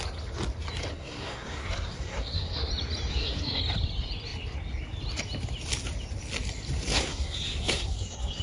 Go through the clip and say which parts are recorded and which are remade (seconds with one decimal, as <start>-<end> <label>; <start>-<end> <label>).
0.0-0.9 recorded; 0.9-2.7 remade; 2.7-3.1 recorded; 3.1-3.6 remade; 3.6-6.9 recorded; 6.9-8.4 remade